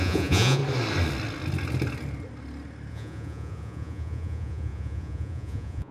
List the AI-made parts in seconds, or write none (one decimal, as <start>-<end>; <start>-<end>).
0.0-0.6; 2.9-5.9